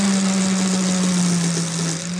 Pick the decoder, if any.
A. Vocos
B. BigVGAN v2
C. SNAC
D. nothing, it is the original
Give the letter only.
D